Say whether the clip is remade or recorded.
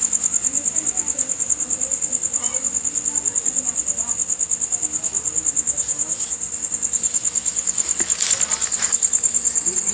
recorded